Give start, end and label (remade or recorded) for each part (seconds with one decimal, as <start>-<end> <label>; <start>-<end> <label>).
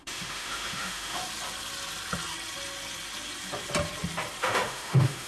0.0-1.2 remade; 1.2-4.4 recorded; 4.4-5.3 remade